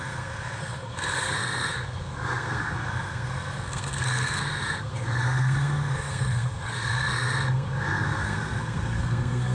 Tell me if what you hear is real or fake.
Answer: fake